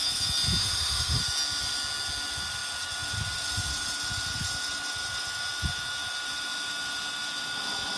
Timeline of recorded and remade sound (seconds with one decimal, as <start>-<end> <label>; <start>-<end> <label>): 0.0-0.6 recorded; 0.6-1.2 remade; 1.2-8.0 recorded